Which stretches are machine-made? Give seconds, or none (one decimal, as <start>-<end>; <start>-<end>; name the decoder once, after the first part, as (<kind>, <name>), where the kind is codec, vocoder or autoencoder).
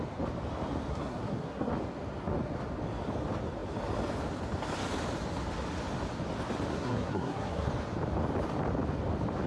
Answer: 0.9-1.7 (codec, SNAC); 6.7-7.7